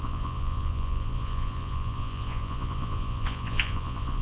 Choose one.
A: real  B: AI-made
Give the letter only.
B